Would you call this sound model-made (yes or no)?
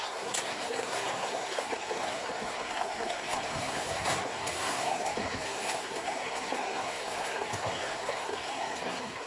yes